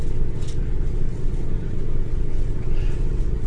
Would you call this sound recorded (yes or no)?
no